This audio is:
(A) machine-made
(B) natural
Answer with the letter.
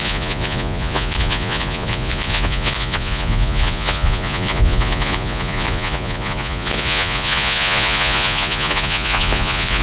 A